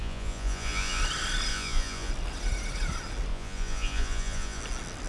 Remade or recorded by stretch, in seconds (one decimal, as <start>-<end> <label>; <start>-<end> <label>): 0.0-1.0 remade; 1.0-1.5 recorded; 1.5-2.1 remade; 2.1-3.3 recorded; 3.3-4.6 remade; 4.6-5.1 recorded